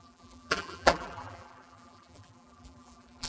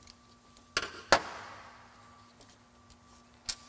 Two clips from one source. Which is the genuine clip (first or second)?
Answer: second